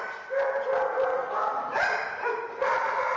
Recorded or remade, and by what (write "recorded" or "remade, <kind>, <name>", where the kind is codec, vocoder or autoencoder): recorded